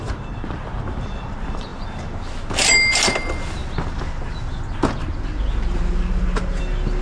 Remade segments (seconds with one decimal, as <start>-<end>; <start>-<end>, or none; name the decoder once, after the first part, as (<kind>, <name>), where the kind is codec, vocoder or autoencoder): none